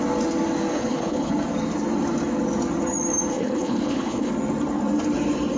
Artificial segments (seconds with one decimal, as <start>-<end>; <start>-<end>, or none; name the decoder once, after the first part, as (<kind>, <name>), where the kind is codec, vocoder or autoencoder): 0.7-1.3 (codec, HILCodec); 3.3-4.3